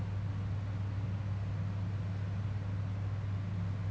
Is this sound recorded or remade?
recorded